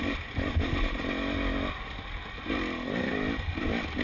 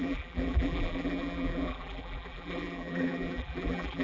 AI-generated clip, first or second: second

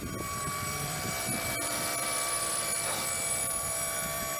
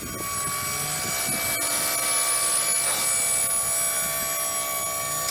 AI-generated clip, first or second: first